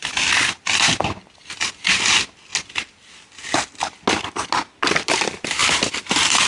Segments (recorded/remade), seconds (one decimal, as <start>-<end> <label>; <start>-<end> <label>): 0.0-6.5 recorded